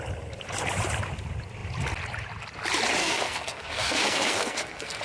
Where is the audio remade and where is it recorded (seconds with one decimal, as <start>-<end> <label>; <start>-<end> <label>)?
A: 0.0-3.0 recorded; 3.0-5.0 remade